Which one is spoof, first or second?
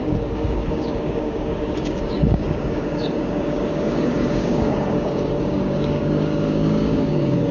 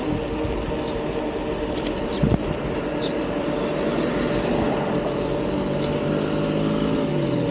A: first